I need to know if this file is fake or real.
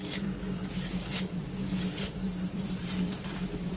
fake